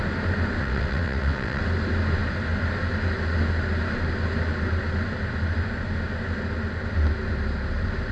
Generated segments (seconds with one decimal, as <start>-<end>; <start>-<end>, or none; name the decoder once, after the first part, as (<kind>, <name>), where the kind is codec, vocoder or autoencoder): 0.6-1.6 (vocoder, WaveNeXt)